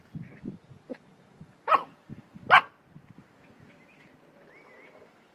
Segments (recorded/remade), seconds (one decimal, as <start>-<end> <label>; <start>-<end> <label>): 0.0-0.9 recorded; 0.9-2.2 remade; 2.2-5.3 recorded